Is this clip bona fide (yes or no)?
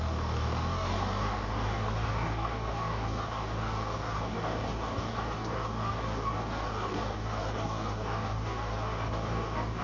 no